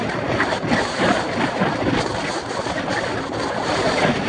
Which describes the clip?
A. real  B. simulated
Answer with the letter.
B